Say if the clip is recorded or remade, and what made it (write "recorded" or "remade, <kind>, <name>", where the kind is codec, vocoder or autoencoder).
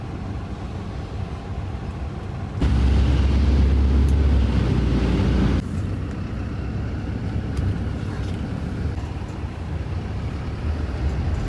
recorded